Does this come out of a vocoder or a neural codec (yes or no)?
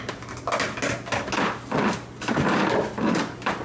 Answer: no